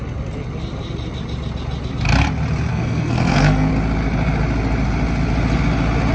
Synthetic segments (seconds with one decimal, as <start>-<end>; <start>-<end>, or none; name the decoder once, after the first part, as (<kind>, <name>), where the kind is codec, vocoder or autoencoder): 2.7-3.7 (codec, SNAC)